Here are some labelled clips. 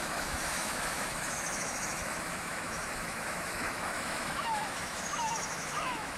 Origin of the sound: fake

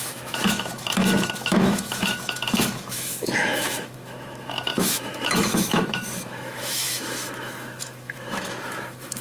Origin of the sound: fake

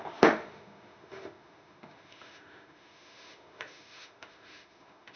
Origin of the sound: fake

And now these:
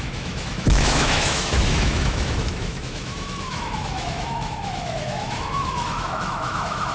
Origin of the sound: fake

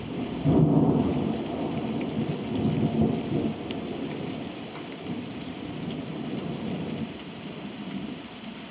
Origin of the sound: real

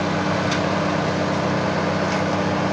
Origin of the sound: real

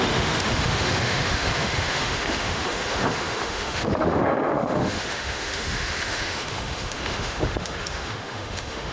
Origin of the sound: fake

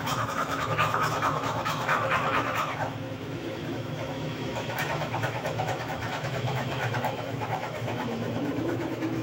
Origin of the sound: fake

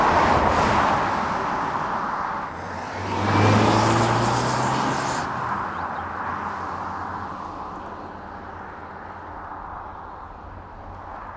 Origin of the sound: real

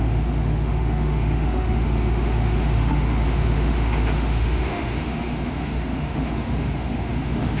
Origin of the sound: fake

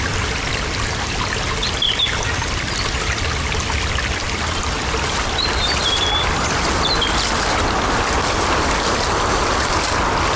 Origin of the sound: real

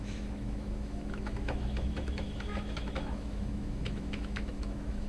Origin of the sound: fake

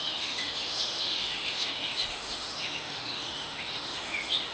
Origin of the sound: fake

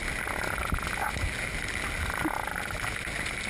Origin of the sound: real